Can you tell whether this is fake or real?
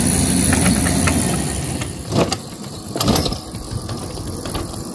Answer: real